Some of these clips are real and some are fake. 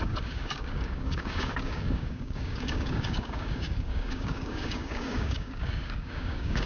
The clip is fake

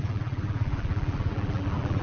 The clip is fake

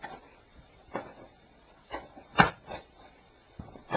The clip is fake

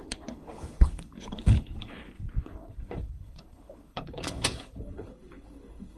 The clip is fake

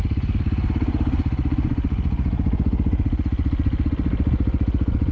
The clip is real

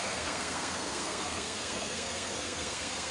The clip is fake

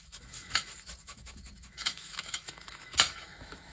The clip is fake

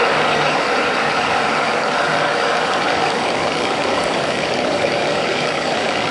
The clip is fake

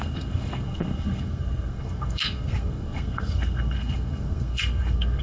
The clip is fake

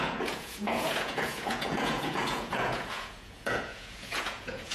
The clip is fake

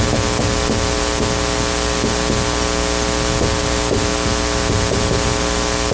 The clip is real